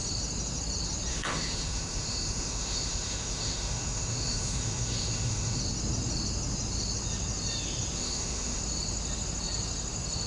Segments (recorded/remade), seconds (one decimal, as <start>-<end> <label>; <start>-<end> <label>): 0.0-1.1 recorded; 1.1-5.6 remade; 5.6-8.0 recorded; 8.0-8.6 remade; 8.6-10.3 recorded

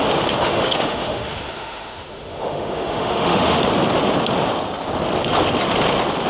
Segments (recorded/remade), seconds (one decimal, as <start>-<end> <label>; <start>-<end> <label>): 0.0-0.4 recorded; 0.4-3.6 remade; 3.6-6.3 recorded

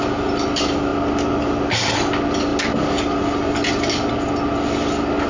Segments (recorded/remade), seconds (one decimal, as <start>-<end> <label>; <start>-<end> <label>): 0.0-5.3 recorded